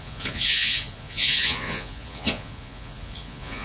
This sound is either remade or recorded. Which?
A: remade